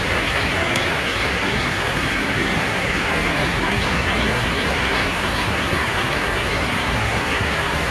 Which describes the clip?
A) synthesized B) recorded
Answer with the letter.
A